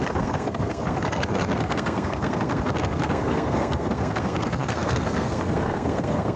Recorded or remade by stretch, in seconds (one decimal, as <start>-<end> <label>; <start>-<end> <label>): 0.0-6.4 remade